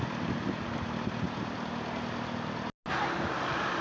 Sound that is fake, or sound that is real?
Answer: real